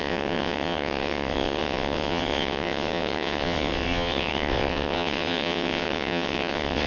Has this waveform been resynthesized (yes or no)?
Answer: yes